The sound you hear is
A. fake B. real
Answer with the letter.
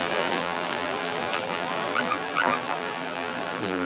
A